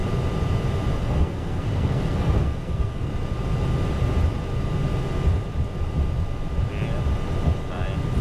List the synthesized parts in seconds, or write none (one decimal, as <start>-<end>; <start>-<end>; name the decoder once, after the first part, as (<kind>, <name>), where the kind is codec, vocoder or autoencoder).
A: 1.0-3.1 (codec, SNAC)